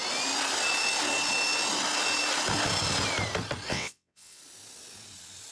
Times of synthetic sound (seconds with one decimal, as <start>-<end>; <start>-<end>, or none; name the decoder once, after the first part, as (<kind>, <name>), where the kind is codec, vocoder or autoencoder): 3.7-4.4 (vocoder, WaveNeXt)